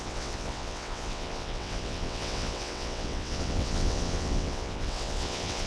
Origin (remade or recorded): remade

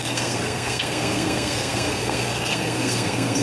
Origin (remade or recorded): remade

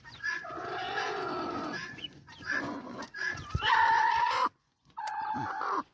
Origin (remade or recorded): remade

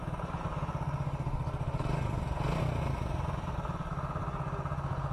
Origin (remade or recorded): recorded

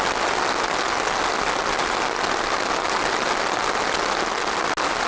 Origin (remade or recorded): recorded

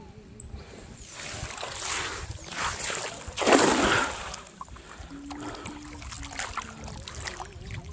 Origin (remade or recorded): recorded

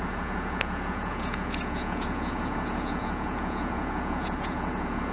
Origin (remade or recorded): remade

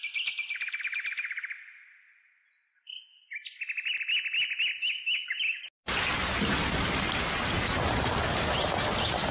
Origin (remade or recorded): recorded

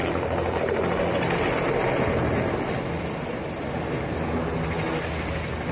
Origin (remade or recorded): recorded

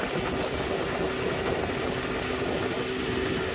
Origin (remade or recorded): recorded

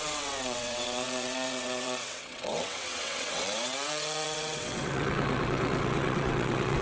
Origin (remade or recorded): remade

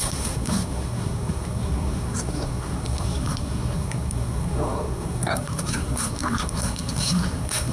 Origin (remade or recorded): remade